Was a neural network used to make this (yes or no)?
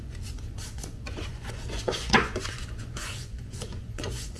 yes